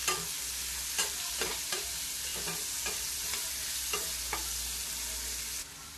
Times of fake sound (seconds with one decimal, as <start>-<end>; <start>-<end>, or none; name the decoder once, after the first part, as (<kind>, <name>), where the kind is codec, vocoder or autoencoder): 1.3-2.3 (vocoder, BigVGAN v2)

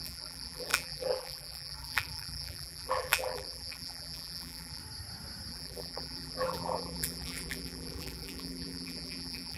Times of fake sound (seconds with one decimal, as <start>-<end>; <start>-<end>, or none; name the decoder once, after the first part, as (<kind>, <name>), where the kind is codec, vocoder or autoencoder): 0.0-4.8 (vocoder, BigVGAN v2); 5.5-9.6

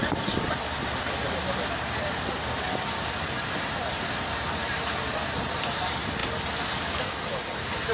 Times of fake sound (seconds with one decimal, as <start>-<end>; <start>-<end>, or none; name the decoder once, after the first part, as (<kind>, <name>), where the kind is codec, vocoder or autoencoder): 0.0-7.9 (vocoder, BigVGAN v2)

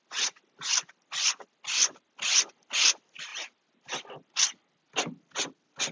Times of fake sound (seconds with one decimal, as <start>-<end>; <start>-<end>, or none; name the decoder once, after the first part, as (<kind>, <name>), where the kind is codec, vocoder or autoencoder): none

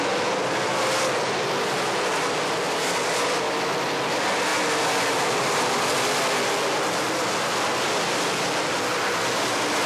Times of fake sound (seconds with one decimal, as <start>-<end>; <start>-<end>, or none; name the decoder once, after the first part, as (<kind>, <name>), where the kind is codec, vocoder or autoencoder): none